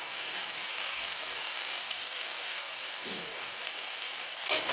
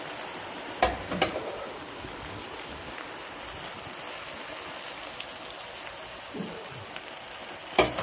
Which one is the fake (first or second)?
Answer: first